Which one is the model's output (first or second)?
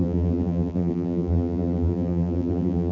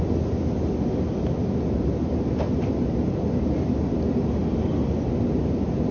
first